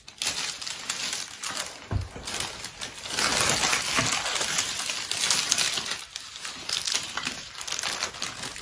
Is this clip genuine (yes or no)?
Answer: yes